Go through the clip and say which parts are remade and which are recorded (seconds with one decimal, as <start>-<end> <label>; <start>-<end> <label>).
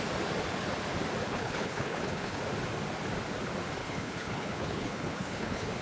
0.0-1.3 recorded; 1.3-2.4 remade; 2.4-3.8 recorded; 3.8-5.8 remade